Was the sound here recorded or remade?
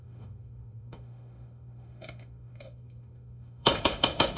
remade